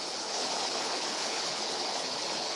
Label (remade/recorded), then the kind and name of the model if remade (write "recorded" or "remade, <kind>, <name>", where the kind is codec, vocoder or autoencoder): remade, codec, HILCodec